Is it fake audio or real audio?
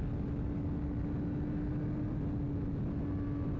real